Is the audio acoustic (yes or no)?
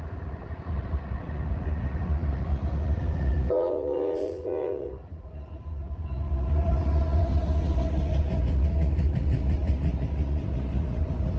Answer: no